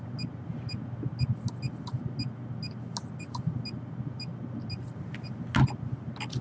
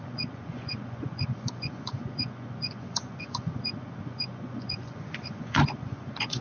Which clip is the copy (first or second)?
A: second